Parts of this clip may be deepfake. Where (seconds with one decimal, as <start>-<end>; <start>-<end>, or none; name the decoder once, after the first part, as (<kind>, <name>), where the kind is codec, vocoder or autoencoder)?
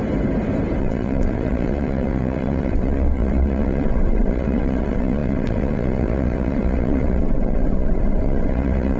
0.8-9.0 (vocoder, WaveNeXt)